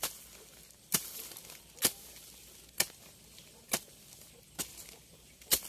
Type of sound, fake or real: real